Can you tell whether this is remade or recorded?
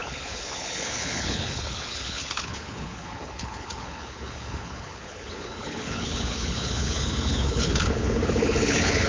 remade